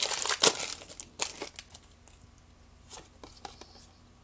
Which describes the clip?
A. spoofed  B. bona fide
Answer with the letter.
B